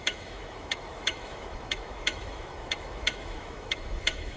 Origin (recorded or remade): remade